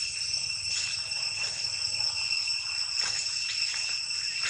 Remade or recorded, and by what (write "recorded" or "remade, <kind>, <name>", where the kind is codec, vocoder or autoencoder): recorded